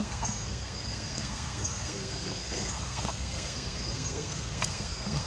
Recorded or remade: remade